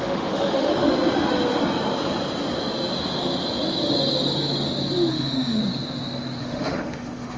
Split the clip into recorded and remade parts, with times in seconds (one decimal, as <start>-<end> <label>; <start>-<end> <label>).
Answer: 0.0-0.7 remade; 0.7-5.1 recorded; 5.1-5.6 remade; 5.6-6.4 recorded; 6.4-7.4 remade